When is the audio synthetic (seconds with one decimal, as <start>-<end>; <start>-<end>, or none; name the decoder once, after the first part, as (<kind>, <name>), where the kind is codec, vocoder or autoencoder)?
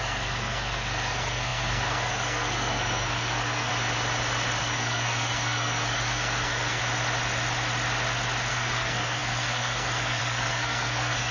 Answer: 0.0-3.7 (codec, SNAC); 4.6-6.8; 8.5-11.3